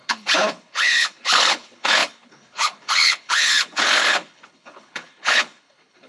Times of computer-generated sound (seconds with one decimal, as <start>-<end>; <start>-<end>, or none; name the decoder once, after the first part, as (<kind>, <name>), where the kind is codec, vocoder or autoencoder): 0.0-6.1 (codec, HILCodec)